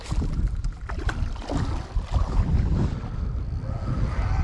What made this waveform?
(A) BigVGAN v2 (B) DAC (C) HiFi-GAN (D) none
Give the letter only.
D